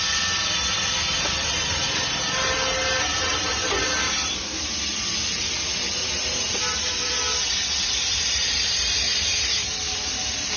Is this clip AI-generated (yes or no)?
yes